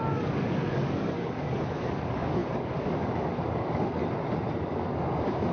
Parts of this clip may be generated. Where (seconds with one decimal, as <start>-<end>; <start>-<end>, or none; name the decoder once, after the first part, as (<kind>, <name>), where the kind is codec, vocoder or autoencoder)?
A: 0.0-4.0 (codec, DAC); 4.6-5.5